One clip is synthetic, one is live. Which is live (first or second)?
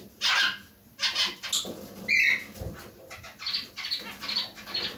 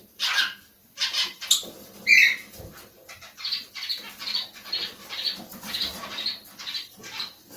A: first